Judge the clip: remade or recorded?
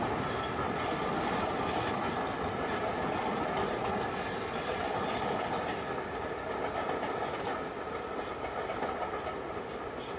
recorded